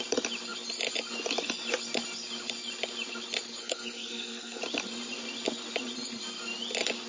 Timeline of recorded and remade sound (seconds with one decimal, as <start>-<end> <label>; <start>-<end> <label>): 0.0-3.6 recorded; 3.6-4.6 remade; 4.6-7.1 recorded